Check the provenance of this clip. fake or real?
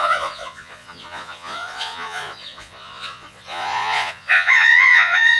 fake